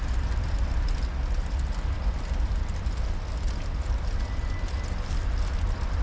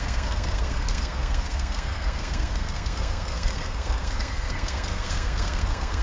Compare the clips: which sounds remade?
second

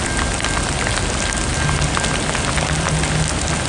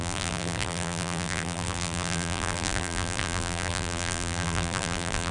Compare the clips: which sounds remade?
second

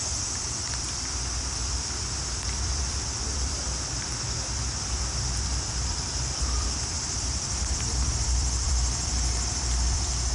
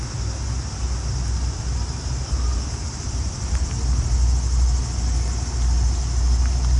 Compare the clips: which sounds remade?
first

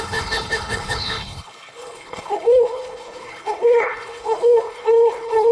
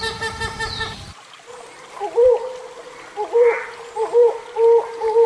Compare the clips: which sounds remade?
first